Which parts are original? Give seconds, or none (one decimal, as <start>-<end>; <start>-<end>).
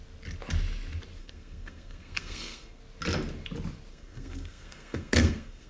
0.0-1.2; 2.8-3.9